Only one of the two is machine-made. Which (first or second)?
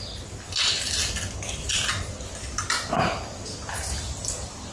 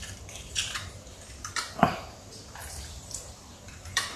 second